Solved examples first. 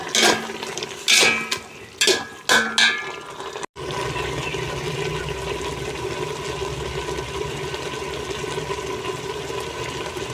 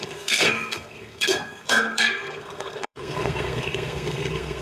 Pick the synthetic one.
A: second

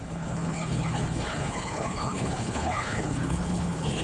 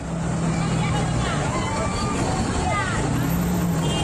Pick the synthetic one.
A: first